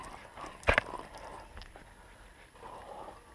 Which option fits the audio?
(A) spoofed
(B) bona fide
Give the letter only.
B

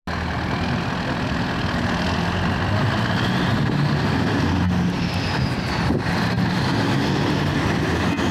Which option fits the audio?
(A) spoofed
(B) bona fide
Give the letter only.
B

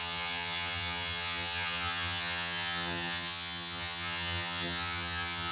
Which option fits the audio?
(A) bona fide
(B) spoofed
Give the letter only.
B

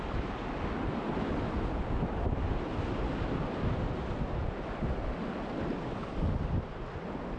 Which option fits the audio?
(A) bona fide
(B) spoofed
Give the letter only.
A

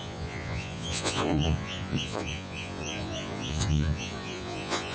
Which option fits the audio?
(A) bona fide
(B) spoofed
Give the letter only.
B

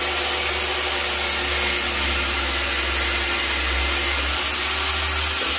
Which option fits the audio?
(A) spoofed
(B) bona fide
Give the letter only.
B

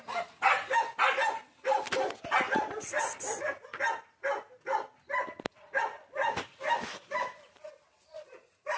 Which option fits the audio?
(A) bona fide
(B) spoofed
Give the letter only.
A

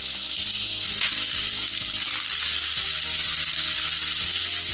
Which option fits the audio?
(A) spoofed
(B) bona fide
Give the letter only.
B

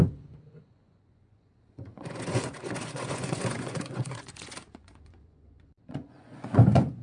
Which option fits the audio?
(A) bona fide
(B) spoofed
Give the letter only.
B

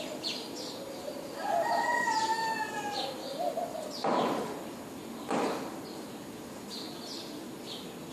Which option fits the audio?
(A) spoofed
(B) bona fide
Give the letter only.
B